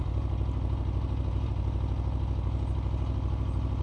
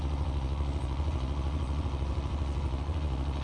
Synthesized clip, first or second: second